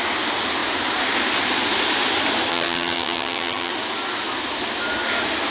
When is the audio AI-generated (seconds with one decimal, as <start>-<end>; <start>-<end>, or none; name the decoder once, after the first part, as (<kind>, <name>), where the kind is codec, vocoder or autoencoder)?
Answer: 2.5-3.7 (vocoder, HiFi-GAN)

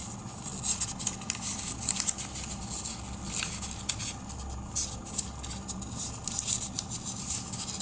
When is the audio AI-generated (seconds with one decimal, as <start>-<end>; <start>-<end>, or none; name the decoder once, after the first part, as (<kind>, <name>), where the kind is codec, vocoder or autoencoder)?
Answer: none

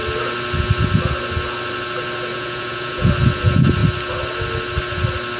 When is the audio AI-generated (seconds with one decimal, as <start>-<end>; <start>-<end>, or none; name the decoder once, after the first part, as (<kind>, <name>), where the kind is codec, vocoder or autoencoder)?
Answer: 2.3-3.1 (vocoder, Vocos)

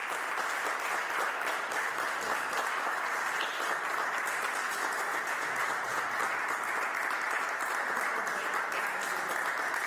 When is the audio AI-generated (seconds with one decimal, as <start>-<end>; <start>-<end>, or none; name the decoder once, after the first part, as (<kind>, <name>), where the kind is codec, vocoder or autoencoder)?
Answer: 5.1-6.0 (vocoder, Vocos)

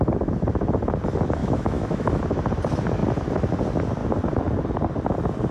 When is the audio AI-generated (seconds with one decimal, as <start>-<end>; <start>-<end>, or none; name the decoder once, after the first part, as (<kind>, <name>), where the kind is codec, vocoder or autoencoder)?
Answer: 1.4-2.2 (autoencoder, DAC-VAE)

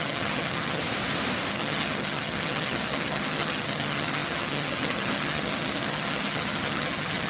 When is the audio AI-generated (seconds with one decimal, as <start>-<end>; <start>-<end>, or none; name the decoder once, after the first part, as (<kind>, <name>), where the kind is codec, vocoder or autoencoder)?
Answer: 0.0-0.8 (vocoder, HiFi-GAN); 1.5-7.3

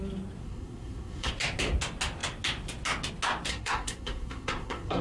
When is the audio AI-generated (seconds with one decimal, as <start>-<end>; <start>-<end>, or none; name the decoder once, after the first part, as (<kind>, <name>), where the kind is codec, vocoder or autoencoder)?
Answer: 0.4-1.3 (codec, SNAC); 3.5-5.0

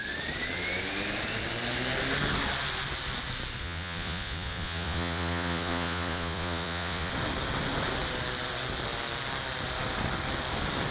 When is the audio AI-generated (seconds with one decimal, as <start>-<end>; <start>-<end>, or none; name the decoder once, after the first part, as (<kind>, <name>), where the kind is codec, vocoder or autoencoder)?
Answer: 3.6-7.1 (vocoder, Vocos)